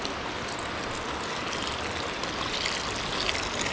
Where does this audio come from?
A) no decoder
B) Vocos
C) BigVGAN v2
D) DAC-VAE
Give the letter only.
A